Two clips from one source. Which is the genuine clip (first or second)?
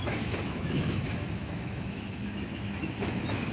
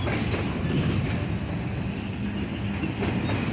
second